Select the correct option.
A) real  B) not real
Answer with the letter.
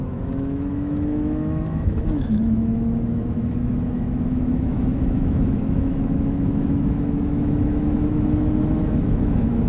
B